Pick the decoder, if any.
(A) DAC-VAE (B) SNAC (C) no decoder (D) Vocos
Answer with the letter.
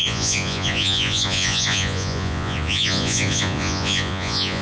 D